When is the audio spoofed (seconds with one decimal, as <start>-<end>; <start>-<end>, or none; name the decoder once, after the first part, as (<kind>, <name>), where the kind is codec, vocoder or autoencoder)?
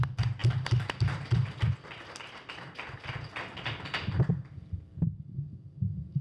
none